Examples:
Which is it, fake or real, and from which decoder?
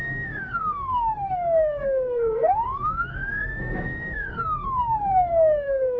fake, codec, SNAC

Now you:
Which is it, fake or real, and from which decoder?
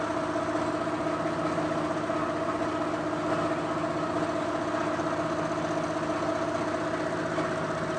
real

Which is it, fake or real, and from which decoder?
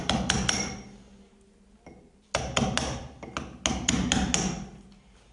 real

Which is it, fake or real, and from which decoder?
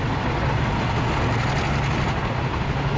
real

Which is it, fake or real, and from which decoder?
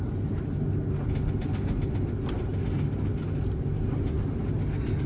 real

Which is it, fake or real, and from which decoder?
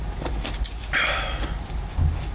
real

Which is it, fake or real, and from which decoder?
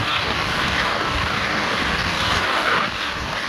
fake, codec, DAC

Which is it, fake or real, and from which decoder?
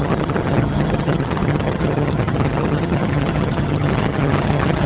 fake, vocoder, HiFi-GAN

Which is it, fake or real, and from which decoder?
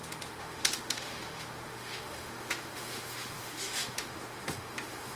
fake, autoencoder, DAC-VAE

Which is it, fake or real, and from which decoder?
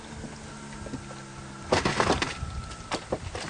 real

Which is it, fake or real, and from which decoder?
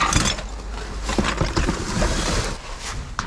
real